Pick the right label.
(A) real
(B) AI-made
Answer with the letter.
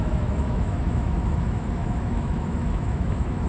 B